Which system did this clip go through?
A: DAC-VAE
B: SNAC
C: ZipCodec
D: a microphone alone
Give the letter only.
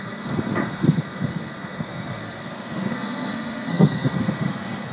B